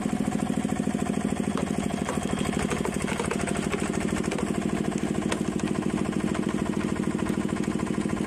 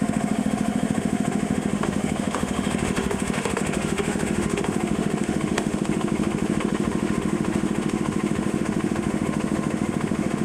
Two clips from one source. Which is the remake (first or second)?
second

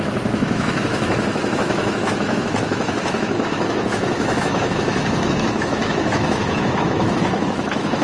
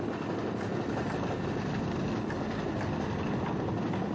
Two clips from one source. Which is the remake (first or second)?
first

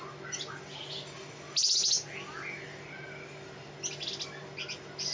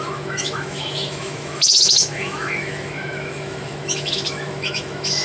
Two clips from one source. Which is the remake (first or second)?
second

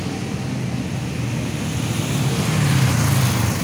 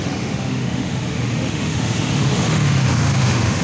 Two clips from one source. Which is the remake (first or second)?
second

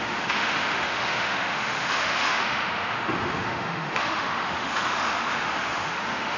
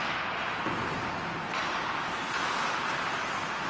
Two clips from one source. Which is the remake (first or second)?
first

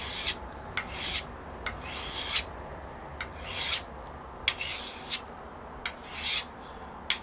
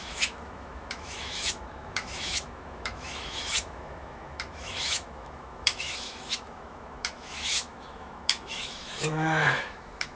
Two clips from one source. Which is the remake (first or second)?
second